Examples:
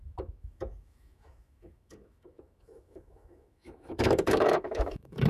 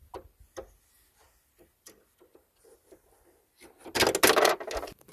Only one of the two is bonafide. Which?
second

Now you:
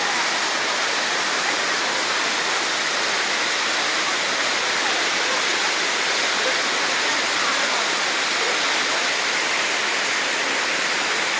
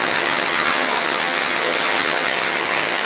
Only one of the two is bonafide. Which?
first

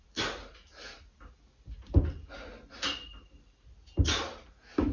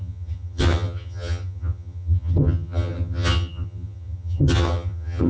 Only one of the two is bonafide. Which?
first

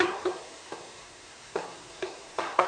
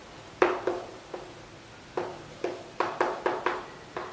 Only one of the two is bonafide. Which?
second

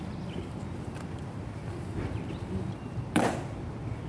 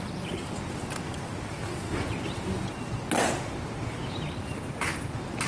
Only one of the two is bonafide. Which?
second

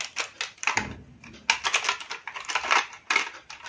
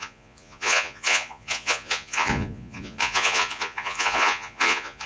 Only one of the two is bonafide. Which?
first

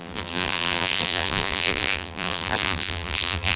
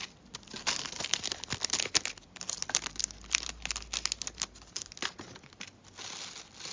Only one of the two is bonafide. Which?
second